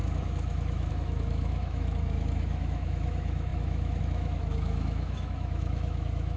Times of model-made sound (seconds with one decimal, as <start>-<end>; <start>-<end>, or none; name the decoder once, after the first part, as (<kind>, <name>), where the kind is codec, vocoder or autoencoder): 0.0-6.4 (autoencoder, DAC-VAE)